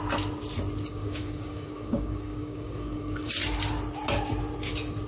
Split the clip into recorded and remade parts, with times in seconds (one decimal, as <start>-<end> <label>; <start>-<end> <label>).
0.0-0.9 recorded; 0.9-3.3 remade; 3.3-5.1 recorded